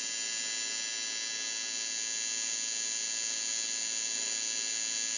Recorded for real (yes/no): yes